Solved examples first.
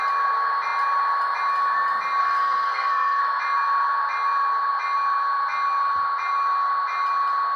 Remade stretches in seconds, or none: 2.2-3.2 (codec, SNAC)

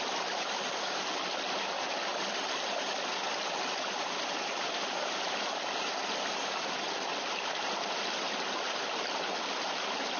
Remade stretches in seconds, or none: none

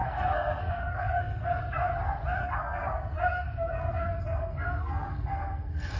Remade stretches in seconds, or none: 0.0-1.6 (codec, SNAC); 2.4-6.0

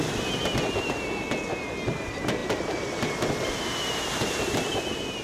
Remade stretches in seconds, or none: none

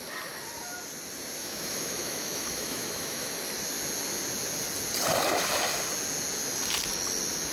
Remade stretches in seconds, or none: 1.4-3.3 (autoencoder, DAC-VAE)

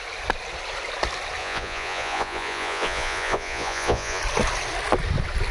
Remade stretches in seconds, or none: 1.4-4.2 (vocoder, Vocos)